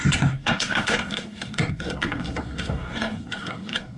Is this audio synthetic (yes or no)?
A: yes